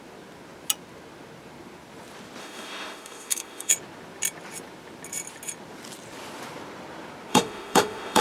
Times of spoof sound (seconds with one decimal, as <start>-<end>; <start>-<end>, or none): 2.4-3.7; 7.3-8.2